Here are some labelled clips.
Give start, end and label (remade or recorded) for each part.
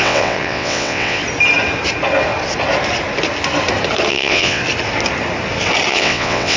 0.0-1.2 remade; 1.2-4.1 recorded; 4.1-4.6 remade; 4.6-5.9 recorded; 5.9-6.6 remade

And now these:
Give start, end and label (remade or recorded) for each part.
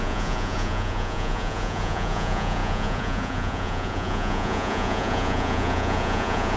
0.0-6.6 remade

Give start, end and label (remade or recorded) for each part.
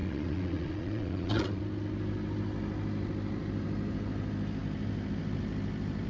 0.0-1.6 remade; 1.6-6.1 recorded